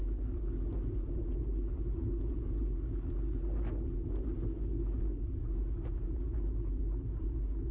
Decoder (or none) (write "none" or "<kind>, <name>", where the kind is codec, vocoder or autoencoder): none